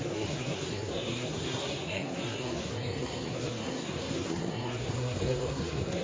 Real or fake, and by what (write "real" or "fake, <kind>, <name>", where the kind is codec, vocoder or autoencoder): fake, codec, SNAC